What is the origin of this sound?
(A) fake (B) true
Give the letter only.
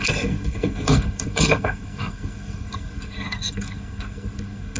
A